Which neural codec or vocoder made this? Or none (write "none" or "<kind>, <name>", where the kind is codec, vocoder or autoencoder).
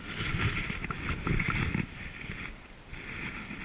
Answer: vocoder, BigVGAN v2